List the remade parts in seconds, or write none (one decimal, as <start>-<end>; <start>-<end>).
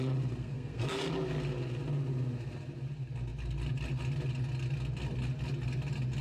0.4-1.0